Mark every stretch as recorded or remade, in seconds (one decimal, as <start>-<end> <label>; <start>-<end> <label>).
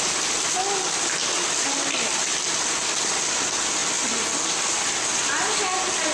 0.0-2.3 remade; 2.3-3.1 recorded; 3.1-3.8 remade; 3.8-4.5 recorded; 4.5-6.1 remade